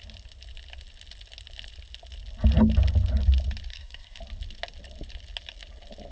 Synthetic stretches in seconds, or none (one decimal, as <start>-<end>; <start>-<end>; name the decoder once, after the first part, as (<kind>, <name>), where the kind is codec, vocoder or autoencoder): 3.7-4.2 (codec, SNAC)